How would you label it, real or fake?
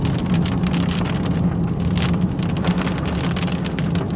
real